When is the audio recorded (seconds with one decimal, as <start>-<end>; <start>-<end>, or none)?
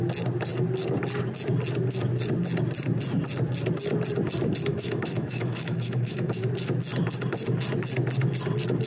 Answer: 0.0-4.7; 6.4-8.9